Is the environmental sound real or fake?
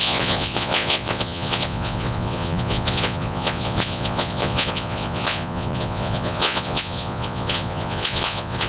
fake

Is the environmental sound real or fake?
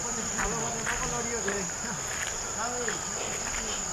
real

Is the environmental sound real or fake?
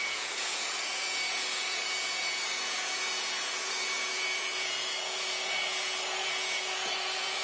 fake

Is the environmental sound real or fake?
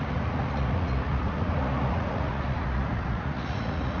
fake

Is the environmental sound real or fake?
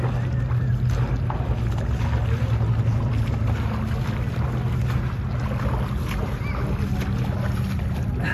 real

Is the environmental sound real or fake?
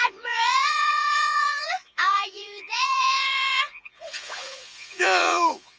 fake